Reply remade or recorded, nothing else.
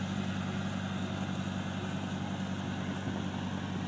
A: recorded